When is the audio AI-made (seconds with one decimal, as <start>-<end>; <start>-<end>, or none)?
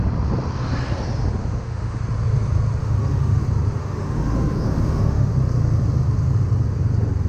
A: 1.4-2.0; 2.8-3.4; 3.8-5.3